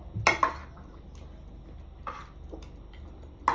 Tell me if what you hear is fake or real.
real